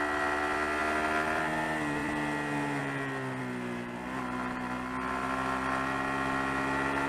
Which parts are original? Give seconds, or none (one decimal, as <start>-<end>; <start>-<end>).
0.0-0.8; 1.4-2.0; 2.8-7.1

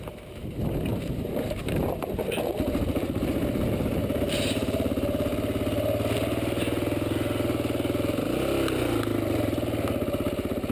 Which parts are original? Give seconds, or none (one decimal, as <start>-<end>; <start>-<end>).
5.3-10.7

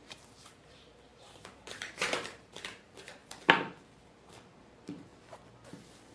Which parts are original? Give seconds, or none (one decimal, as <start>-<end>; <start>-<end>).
3.2-4.0; 5.1-6.1

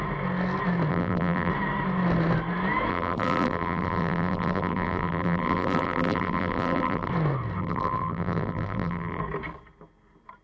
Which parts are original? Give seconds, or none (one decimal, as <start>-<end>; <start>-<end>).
0.0-0.9; 1.5-2.9; 7.1-7.6; 9.2-10.4